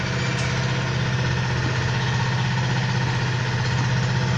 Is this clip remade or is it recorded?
recorded